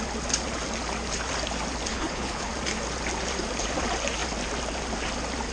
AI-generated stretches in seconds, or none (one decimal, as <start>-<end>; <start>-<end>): 1.9-2.5